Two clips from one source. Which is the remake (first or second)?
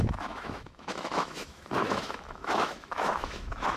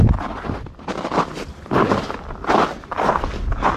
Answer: first